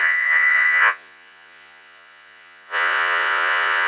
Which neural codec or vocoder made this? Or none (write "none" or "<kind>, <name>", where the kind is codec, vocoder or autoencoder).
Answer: vocoder, Vocos